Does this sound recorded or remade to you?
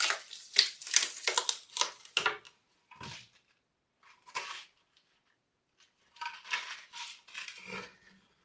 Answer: recorded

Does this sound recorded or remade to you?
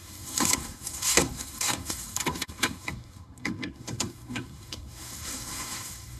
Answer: remade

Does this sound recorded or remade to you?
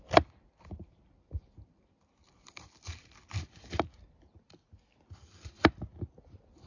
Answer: recorded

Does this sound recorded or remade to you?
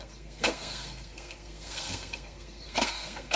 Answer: remade